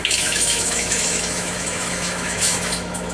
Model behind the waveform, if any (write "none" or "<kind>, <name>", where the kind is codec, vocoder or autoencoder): autoencoder, DAC-VAE